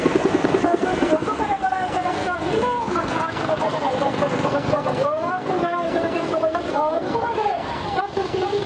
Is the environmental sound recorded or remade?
remade